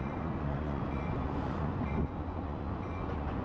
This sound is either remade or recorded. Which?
remade